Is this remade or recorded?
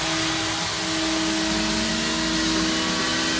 recorded